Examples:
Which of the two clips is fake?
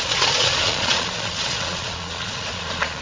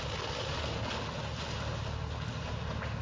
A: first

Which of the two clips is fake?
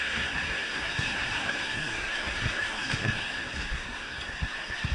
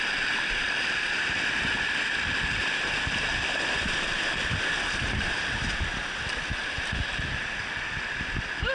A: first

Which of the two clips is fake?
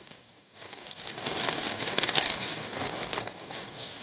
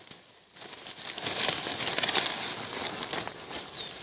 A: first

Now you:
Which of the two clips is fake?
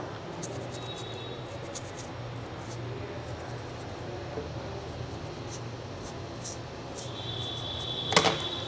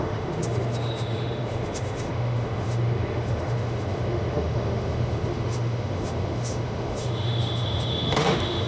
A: second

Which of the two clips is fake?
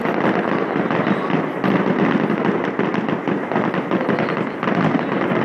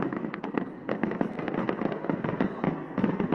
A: second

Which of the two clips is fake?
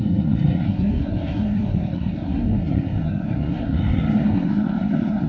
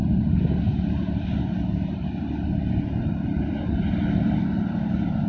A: first